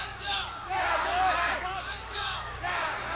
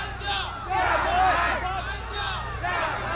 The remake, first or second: first